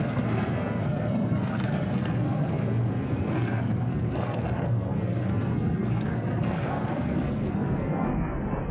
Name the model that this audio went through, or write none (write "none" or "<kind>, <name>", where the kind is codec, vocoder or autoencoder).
codec, SNAC